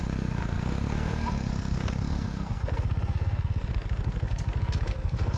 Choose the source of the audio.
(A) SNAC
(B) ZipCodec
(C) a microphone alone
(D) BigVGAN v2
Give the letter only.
A